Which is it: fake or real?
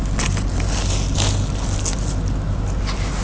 real